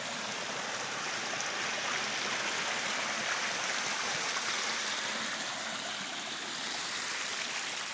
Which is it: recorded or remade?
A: recorded